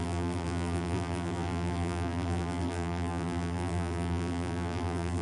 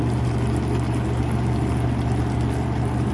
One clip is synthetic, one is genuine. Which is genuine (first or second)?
second